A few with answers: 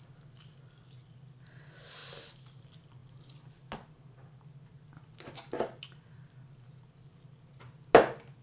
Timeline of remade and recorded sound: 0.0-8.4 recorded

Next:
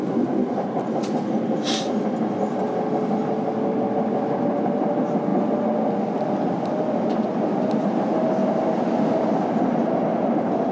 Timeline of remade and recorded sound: 0.0-10.7 recorded

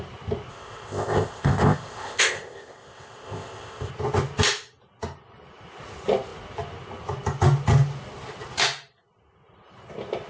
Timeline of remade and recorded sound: 0.0-0.5 recorded; 0.5-3.9 remade; 3.9-10.3 recorded

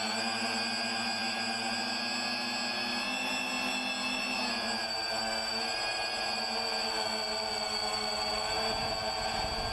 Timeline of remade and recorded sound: 0.0-9.7 recorded

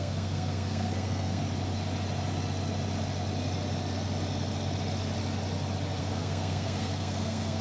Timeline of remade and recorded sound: 0.0-1.4 remade; 1.4-6.0 recorded; 6.0-7.6 remade